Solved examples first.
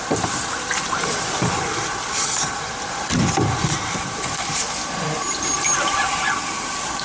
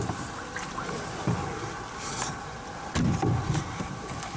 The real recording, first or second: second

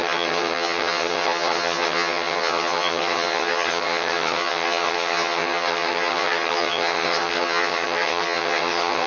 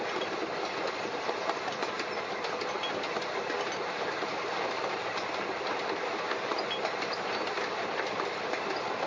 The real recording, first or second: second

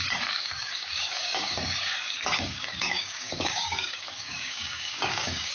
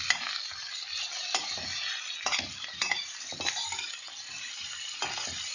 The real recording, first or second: second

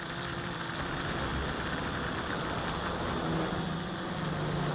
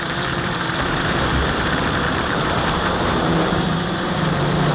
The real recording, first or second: first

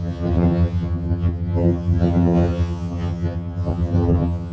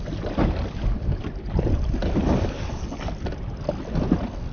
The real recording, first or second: second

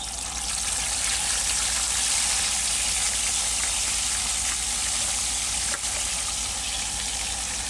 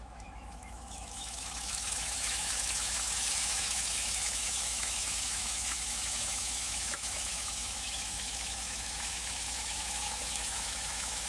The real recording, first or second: first